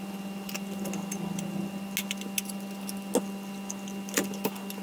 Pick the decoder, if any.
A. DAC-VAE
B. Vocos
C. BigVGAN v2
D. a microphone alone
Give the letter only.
D